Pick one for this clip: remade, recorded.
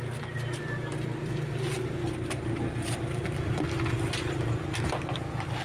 remade